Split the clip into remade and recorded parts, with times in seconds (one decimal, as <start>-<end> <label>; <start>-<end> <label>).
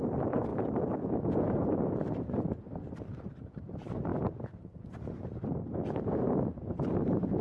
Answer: 0.0-0.5 remade; 0.5-1.4 recorded; 1.4-7.4 remade